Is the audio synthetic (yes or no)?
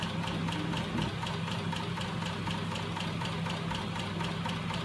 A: no